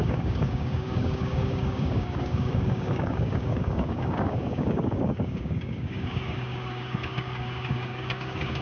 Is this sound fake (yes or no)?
yes